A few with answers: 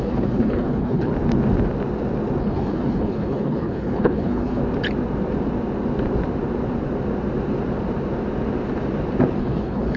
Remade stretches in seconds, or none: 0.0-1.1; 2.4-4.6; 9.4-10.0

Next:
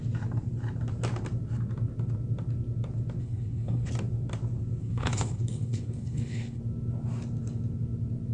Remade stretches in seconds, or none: 3.2-3.9; 4.8-6.6

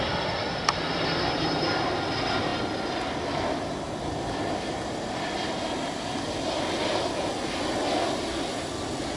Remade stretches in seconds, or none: none

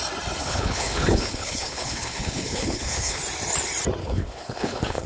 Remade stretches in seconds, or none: 0.4-3.2; 4.0-5.1

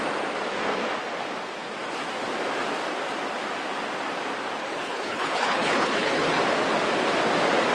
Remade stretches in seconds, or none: 4.6-6.4

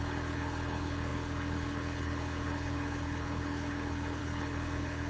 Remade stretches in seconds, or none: 0.0-5.1